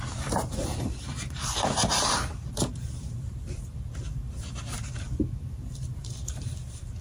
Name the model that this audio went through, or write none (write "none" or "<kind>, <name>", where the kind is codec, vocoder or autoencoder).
vocoder, BigVGAN v2